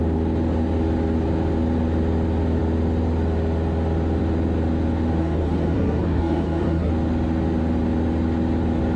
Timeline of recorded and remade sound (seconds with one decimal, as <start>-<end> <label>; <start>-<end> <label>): 0.0-5.2 recorded; 5.2-6.9 remade; 6.9-9.0 recorded